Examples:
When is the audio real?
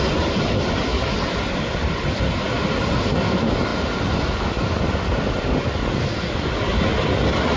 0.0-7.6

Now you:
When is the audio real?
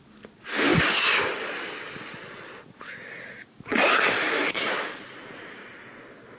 0.0-6.4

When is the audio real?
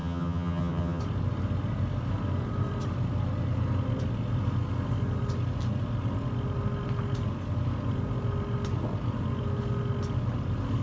1.0-10.8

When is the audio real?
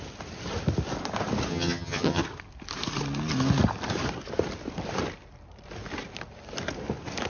0.0-1.5; 2.2-7.3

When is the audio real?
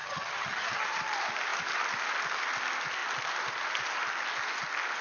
1.0-5.0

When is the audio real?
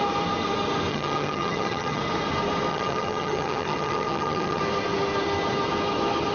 0.0-0.9; 2.0-2.7; 4.6-6.3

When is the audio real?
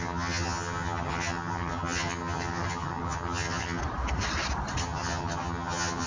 3.8-4.8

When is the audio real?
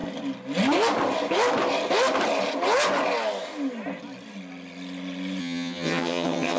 0.0-5.4